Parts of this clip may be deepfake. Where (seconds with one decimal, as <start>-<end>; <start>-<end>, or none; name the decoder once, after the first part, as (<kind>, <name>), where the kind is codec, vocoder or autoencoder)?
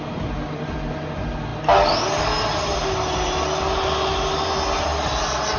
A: none